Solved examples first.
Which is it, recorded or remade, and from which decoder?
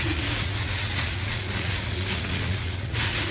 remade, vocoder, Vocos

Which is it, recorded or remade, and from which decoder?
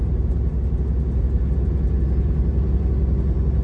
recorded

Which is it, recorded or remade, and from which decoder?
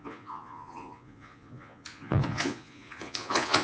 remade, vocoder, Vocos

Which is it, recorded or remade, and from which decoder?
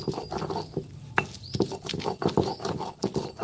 recorded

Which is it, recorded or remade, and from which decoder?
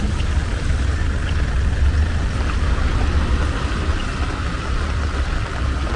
recorded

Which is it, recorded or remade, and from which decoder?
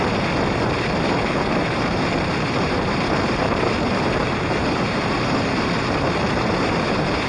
remade, vocoder, BigVGAN v2